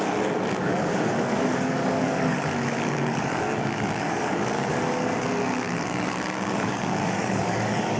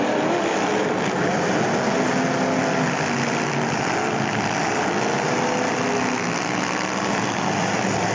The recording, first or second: second